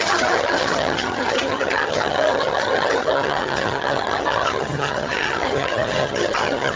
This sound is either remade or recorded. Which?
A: remade